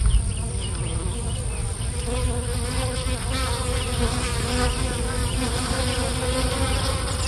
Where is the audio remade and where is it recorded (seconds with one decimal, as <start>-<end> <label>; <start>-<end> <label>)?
0.0-5.2 recorded; 5.2-5.8 remade; 5.8-7.3 recorded